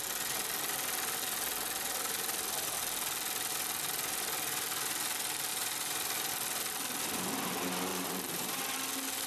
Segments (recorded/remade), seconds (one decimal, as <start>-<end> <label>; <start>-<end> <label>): 0.0-5.5 recorded; 5.5-6.3 remade; 6.3-7.9 recorded; 7.9-8.6 remade; 8.6-9.3 recorded